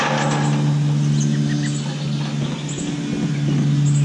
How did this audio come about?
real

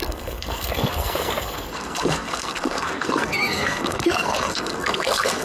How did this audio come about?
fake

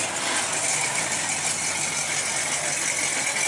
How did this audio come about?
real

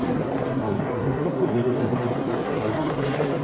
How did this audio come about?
fake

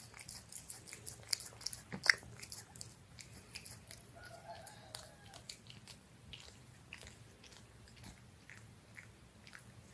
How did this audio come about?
real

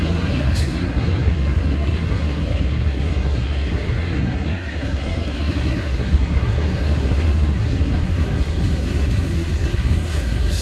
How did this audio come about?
fake